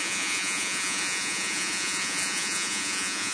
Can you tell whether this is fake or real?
fake